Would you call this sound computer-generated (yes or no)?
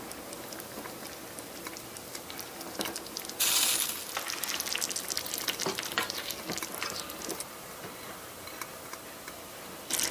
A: no